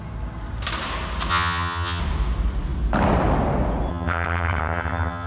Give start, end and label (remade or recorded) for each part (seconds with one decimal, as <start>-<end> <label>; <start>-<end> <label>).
0.0-1.3 recorded; 1.3-2.0 remade; 2.0-3.9 recorded; 3.9-5.3 remade